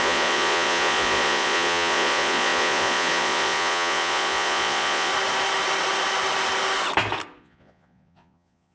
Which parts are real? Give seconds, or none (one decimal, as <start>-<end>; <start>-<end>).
5.1-7.4